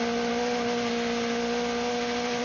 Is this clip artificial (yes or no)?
no